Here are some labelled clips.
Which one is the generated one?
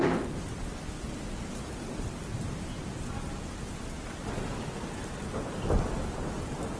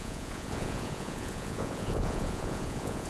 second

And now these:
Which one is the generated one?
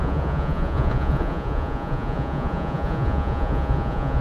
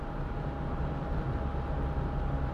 first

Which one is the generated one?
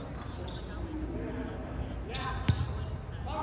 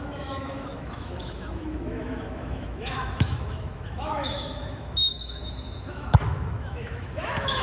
second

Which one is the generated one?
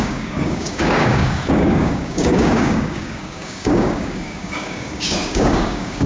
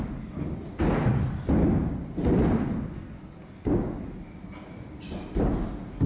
first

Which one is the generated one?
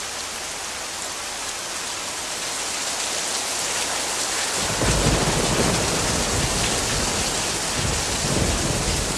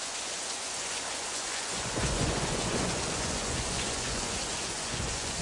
second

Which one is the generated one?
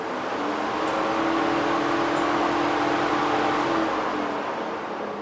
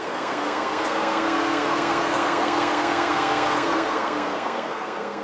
second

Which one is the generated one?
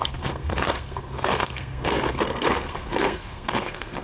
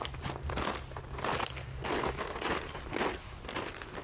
first